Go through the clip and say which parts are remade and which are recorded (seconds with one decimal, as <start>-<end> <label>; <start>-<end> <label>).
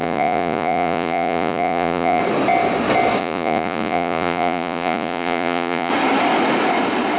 0.0-2.2 remade; 2.2-3.2 recorded; 3.2-5.9 remade; 5.9-7.2 recorded